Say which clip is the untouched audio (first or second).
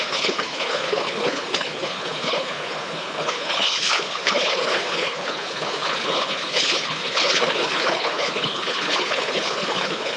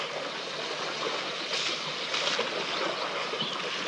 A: second